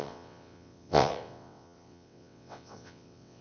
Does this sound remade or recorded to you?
remade